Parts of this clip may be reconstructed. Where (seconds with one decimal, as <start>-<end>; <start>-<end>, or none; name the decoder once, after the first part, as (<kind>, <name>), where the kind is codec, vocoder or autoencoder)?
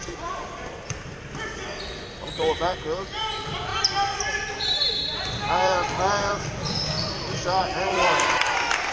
0.0-3.7 (vocoder, BigVGAN v2); 4.6-8.9